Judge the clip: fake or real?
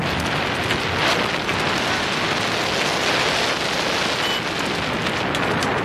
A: real